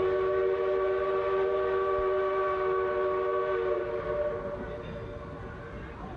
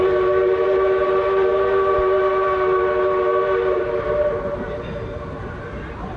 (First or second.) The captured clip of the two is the first